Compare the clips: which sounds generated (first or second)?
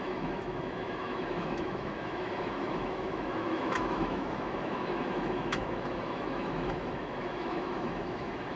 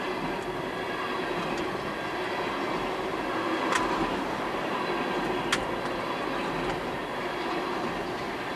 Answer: first